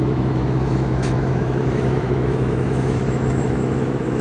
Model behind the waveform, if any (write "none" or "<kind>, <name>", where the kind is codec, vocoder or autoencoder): autoencoder, DAC-VAE